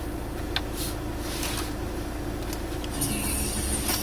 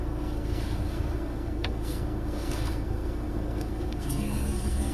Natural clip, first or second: first